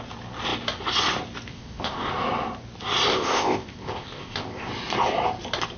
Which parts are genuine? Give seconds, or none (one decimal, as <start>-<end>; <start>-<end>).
0.0-1.5; 2.1-3.1; 4.7-5.8